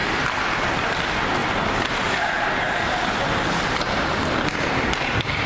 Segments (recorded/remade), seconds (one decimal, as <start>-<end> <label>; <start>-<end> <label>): 0.0-5.5 remade